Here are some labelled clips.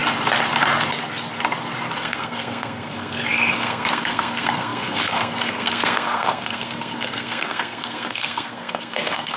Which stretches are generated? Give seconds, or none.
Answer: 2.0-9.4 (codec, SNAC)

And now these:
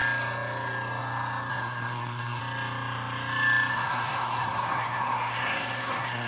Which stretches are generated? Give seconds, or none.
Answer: 1.5-2.4 (codec, SNAC); 3.7-6.3

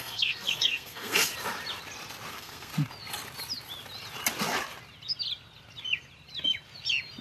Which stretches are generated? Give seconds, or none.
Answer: 0.0-1.3 (codec, SNAC); 2.3-2.7

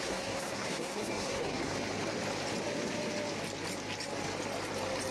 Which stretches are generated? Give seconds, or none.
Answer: 0.0-1.7 (codec, SNAC)

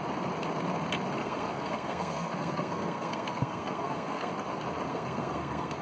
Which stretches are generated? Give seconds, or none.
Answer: 1.2-4.3 (codec, SNAC); 4.9-5.8

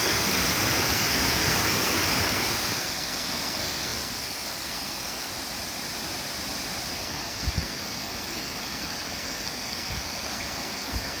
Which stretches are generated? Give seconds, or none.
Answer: 0.0-5.3 (codec, SNAC); 6.9-11.2